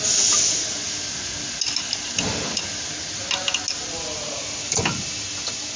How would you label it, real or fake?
real